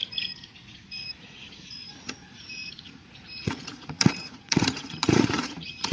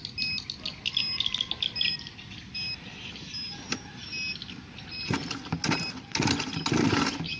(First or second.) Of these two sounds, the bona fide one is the second